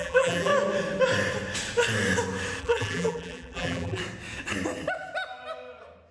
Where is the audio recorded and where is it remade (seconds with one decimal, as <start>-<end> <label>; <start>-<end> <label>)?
0.0-0.5 remade; 0.5-2.6 recorded; 2.6-4.0 remade; 4.0-6.1 recorded